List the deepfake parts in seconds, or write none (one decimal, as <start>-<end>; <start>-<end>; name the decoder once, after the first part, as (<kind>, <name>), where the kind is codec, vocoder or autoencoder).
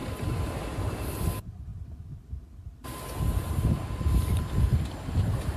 none